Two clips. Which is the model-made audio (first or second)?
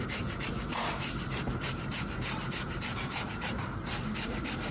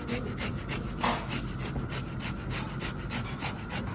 first